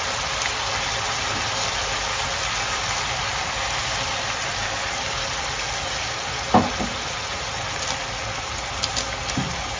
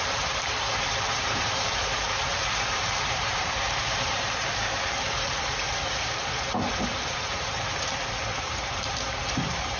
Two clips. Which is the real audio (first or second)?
first